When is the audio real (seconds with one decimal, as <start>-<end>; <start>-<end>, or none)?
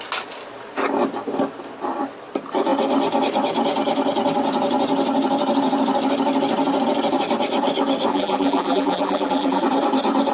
0.0-8.1; 9.6-10.3